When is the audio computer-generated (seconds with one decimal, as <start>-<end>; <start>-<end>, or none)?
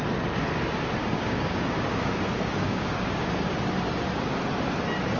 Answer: 1.0-3.6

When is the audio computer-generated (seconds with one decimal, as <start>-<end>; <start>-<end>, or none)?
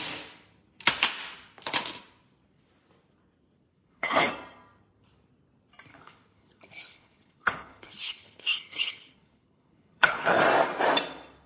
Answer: 3.7-4.3; 5.9-10.4